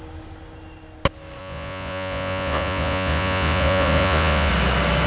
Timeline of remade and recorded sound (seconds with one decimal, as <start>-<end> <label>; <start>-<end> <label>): 0.0-1.4 recorded; 1.4-4.5 remade; 4.5-5.1 recorded